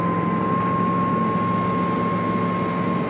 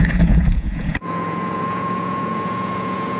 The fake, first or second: second